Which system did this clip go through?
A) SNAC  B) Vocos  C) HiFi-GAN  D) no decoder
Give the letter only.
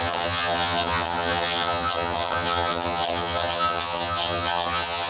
C